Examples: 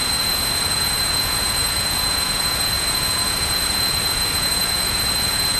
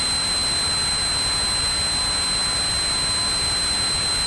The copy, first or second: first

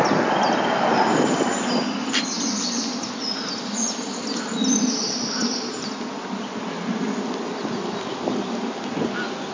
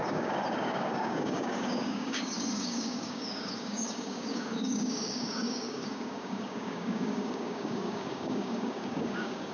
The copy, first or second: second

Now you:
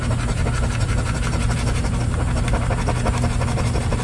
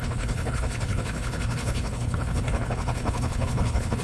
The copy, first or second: second